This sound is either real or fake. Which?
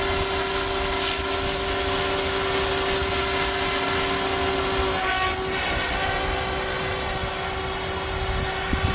real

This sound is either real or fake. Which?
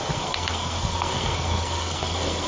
fake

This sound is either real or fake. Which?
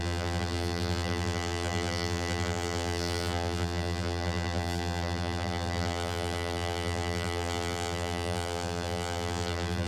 fake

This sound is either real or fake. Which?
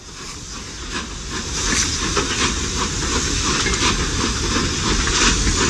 real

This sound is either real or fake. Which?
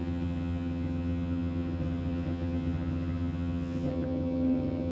fake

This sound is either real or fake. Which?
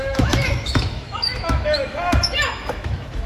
fake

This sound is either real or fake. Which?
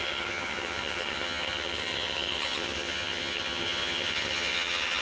fake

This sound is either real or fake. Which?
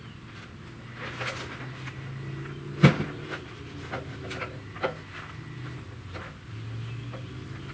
real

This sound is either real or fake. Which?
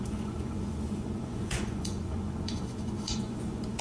fake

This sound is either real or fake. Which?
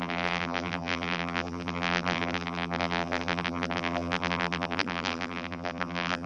fake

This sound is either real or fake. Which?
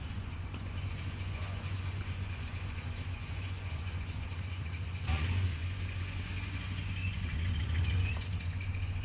fake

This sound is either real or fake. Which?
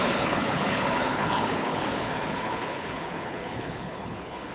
fake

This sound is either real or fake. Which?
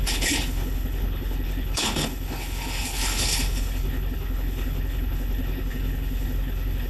fake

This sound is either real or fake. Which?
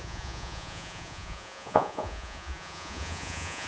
fake